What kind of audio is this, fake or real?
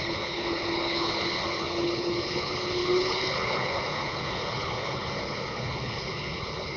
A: fake